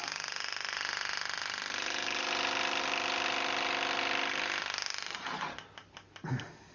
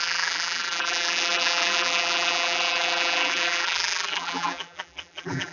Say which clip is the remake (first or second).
second